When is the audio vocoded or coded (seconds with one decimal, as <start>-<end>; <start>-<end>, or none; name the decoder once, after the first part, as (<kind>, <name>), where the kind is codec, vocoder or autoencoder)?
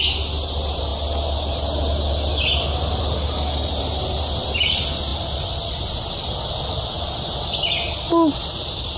none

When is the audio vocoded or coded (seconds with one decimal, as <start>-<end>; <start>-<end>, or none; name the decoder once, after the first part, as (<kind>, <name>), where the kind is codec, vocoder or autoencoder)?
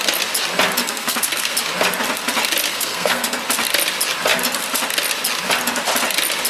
0.8-1.5 (codec, SNAC); 2.7-3.4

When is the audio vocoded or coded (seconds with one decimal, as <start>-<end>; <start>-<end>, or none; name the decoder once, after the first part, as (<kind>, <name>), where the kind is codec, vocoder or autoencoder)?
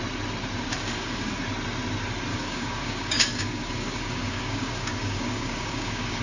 0.7-1.4 (codec, DAC); 2.3-6.2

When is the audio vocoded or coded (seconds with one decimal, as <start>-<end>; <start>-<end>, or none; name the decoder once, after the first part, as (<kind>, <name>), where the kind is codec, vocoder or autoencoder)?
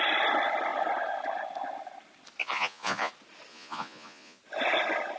2.4-3.1 (vocoder, Vocos); 3.5-4.4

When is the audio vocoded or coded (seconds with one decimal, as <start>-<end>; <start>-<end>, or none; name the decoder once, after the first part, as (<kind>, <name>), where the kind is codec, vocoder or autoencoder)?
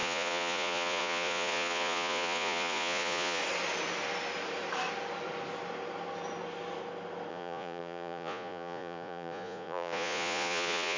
0.0-3.4 (vocoder, Vocos); 7.3-11.0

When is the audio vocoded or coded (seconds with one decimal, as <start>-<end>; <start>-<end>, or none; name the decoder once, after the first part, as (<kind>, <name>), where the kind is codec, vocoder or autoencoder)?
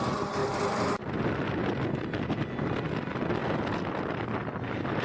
0.4-1.3 (vocoder, BigVGAN v2); 3.4-4.6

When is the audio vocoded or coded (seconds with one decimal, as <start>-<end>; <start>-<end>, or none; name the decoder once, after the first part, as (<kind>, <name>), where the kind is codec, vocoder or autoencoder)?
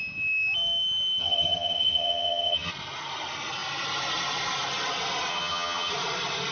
1.2-2.7 (vocoder, HiFi-GAN); 5.3-5.9